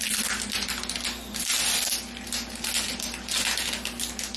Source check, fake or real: fake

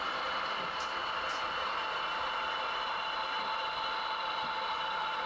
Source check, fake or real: fake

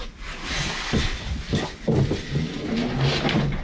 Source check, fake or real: real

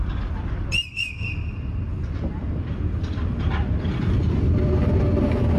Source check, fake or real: fake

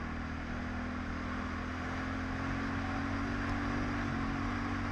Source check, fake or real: real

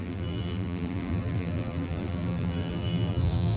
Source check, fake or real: fake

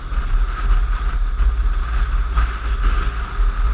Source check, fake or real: real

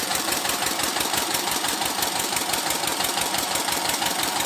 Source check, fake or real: fake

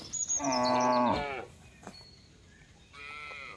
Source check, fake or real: fake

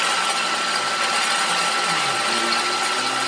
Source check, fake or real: real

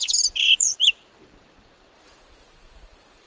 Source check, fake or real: fake